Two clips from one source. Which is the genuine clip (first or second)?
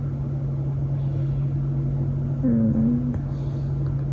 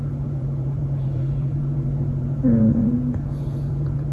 first